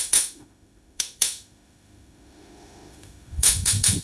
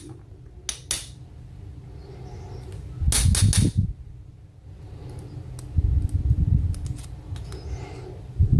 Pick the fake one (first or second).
first